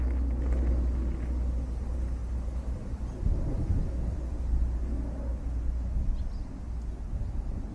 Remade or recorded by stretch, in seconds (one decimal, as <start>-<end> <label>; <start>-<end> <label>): 0.0-7.7 recorded